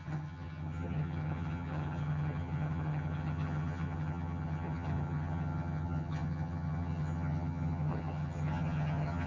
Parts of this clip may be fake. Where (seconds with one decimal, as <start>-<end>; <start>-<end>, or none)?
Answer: 0.0-9.3